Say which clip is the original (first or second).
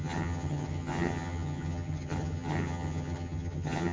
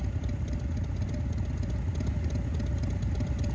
second